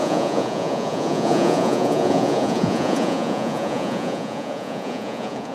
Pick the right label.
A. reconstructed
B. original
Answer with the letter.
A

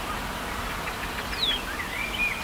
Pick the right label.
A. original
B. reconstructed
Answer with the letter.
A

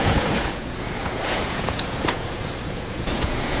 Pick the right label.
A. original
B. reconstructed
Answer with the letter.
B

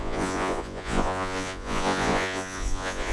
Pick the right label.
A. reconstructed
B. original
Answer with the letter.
A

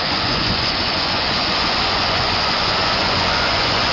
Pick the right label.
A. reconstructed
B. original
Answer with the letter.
A